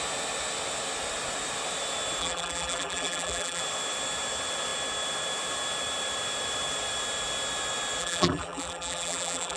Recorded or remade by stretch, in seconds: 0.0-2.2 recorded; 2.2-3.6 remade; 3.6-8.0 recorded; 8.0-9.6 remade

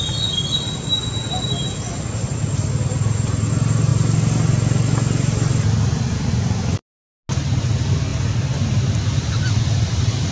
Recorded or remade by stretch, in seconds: 0.0-10.3 recorded

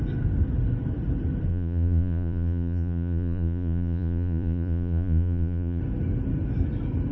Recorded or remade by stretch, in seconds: 0.0-1.5 recorded; 1.5-5.8 remade; 5.8-7.1 recorded

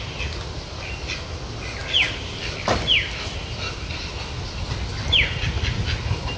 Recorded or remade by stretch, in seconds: 0.0-6.4 recorded